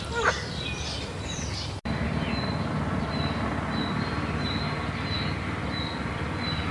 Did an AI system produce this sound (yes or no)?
no